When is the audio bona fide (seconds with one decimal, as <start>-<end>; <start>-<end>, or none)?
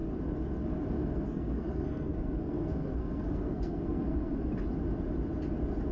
0.0-1.0; 4.5-5.9